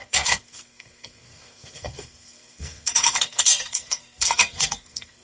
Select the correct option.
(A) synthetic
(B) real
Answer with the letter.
A